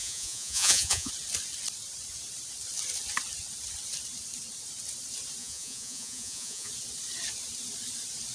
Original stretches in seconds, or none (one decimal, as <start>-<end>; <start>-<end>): 1.1-5.4; 6.7-8.3